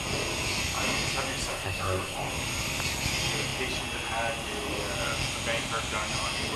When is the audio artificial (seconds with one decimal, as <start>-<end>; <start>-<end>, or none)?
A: 1.5-2.3